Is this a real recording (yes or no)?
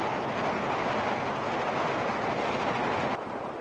yes